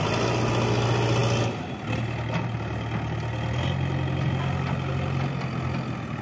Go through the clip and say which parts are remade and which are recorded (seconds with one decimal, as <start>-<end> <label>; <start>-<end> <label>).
0.0-6.2 recorded